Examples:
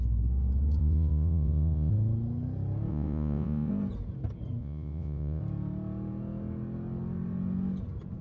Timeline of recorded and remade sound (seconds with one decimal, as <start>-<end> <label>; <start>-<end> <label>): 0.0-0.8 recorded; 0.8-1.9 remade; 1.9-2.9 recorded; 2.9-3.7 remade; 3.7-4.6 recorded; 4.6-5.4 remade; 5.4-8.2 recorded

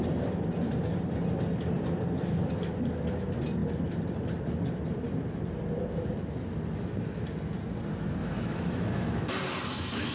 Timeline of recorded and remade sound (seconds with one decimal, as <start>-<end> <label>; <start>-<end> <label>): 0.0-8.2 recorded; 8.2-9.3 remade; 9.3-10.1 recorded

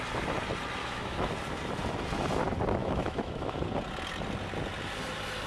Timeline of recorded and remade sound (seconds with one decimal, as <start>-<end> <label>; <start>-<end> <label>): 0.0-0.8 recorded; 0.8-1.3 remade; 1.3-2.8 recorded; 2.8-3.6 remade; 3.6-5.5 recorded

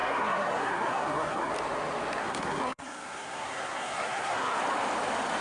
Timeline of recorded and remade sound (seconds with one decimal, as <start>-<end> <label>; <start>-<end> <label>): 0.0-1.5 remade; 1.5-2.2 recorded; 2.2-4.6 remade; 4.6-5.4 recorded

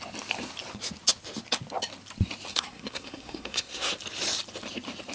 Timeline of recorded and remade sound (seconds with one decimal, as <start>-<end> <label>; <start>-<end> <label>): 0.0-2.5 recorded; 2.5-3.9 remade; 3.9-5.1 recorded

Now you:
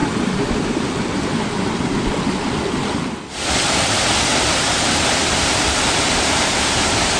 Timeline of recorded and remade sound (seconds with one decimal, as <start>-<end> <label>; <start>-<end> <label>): 0.0-7.2 recorded

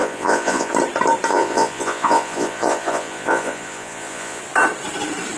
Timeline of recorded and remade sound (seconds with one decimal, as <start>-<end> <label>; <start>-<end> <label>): 0.0-0.7 remade; 0.7-1.3 recorded; 1.3-4.4 remade; 4.4-5.4 recorded